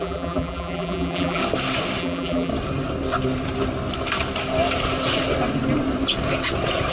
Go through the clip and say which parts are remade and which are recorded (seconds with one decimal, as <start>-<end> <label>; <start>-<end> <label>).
0.0-1.4 remade; 1.4-2.0 recorded; 2.0-2.5 remade; 2.5-6.9 recorded